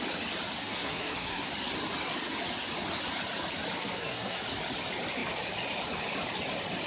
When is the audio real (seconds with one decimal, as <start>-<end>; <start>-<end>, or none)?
0.0-0.6; 1.5-3.8; 4.4-6.9